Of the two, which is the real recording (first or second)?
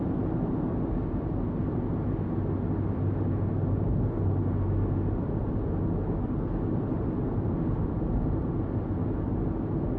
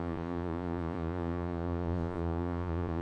first